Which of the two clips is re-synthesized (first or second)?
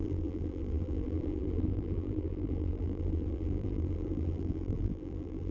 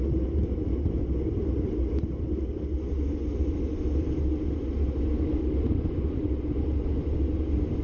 first